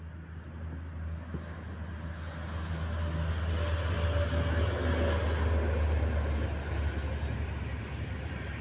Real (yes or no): yes